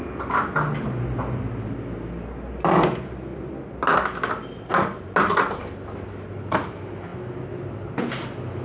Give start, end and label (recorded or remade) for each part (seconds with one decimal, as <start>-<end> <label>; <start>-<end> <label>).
0.0-8.6 recorded